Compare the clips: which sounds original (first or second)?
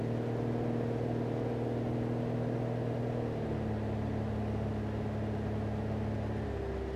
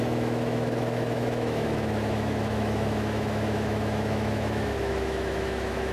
first